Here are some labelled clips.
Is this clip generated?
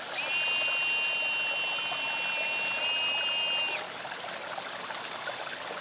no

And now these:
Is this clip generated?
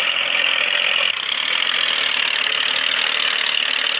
no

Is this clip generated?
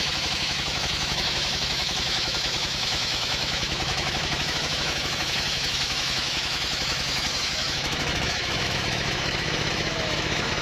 yes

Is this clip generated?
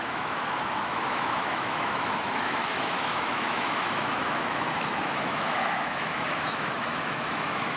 yes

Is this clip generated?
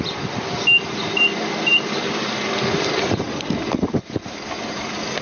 no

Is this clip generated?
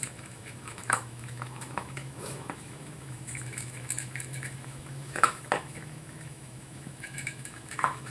yes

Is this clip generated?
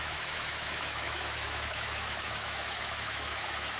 yes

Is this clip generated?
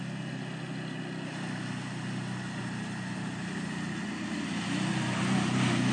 no